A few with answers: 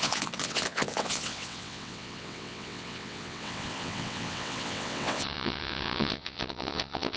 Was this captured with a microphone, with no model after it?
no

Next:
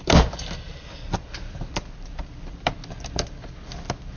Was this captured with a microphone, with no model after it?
no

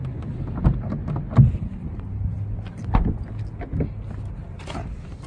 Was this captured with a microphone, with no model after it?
yes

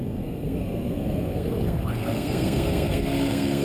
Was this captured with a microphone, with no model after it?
no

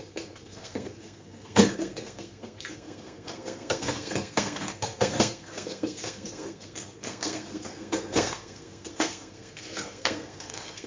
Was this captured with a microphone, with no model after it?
no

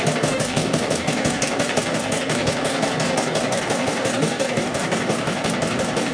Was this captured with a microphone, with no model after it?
no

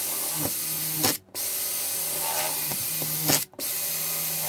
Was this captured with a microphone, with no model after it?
yes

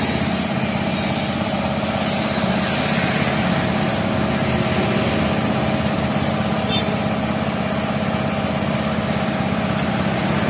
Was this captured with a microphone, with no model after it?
yes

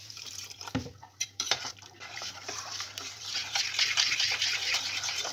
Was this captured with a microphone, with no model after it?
no